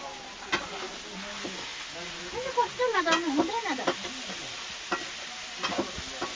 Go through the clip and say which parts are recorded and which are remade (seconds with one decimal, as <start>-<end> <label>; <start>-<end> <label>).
0.0-6.4 recorded